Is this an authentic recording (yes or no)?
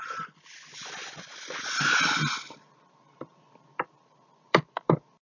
no